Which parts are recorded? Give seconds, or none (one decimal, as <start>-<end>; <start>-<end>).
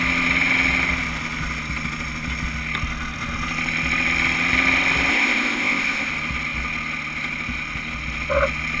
0.0-5.1; 6.1-8.8